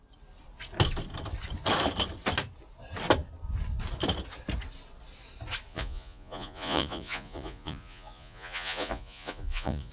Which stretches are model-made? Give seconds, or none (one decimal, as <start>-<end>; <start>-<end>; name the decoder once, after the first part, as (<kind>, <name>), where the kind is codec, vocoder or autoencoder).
5.7-9.9 (vocoder, Vocos)